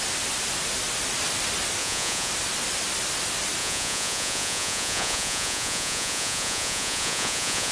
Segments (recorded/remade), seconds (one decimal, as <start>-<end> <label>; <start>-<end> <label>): 0.0-1.8 recorded; 1.8-2.3 remade; 2.3-3.6 recorded; 3.6-7.7 remade